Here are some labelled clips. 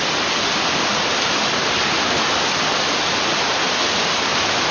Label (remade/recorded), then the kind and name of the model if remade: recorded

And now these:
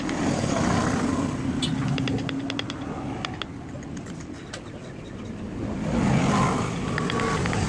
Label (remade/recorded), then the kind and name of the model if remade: recorded